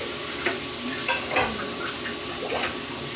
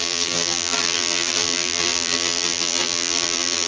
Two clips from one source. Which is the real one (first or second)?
first